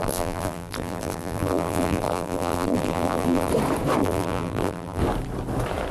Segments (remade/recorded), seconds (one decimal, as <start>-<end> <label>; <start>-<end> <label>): 0.0-3.5 remade; 3.5-4.0 recorded; 4.0-5.0 remade; 5.0-5.9 recorded